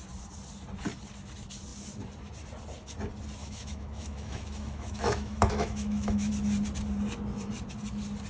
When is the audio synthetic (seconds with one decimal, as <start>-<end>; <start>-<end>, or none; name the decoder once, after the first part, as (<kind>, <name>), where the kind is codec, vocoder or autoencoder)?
3.4-6.3 (autoencoder, DAC-VAE)